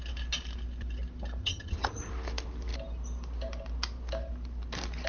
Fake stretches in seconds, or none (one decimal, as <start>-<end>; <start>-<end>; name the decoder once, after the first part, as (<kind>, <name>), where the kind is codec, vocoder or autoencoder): 1.4-2.1 (vocoder, HiFi-GAN)